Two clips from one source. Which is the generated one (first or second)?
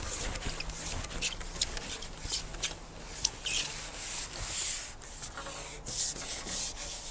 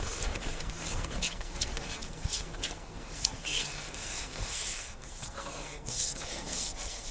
second